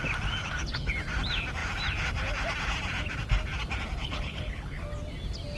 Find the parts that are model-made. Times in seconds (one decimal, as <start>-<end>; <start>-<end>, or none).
0.4-0.9; 4.0-4.8